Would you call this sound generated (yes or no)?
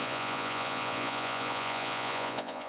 yes